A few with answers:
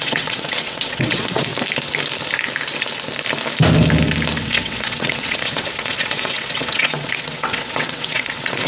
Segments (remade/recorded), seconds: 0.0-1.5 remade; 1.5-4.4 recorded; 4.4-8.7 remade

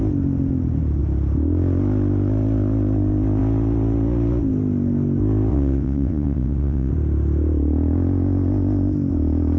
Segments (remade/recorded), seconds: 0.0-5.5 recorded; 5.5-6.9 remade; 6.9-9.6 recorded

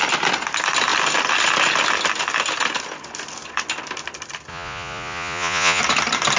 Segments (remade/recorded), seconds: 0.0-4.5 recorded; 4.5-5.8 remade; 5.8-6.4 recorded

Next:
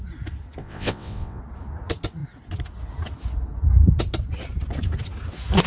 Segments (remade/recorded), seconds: 0.0-0.6 recorded; 0.6-1.4 remade; 1.4-5.7 recorded

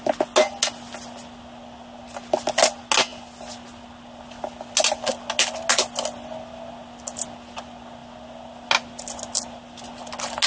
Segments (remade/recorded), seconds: 0.0-10.5 recorded

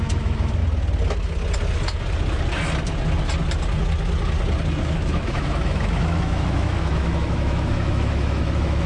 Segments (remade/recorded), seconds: 0.0-0.6 remade; 0.6-4.8 recorded; 4.8-8.9 remade